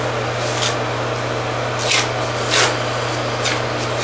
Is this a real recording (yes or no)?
yes